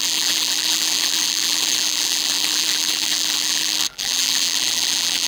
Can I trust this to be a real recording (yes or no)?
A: no